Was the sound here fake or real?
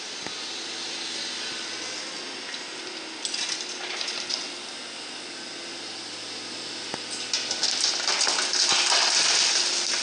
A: real